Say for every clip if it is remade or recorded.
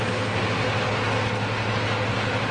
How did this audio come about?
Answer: recorded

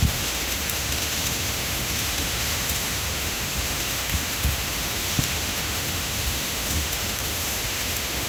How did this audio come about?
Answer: remade